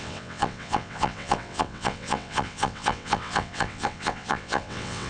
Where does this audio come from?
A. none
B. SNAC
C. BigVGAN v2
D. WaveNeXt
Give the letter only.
D